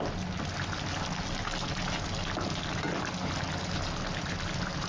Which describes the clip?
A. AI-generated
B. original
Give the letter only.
B